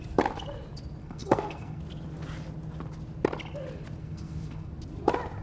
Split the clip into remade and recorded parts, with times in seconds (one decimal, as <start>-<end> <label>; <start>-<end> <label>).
0.0-1.0 recorded; 1.0-1.8 remade; 1.8-4.0 recorded; 4.0-4.7 remade; 4.7-5.4 recorded